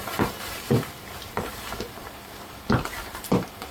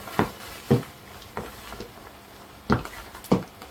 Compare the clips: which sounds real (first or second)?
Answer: second